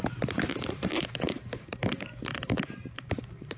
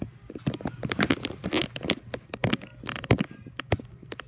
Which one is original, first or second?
second